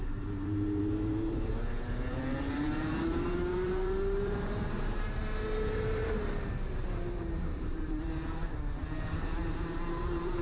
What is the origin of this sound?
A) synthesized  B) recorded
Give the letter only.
A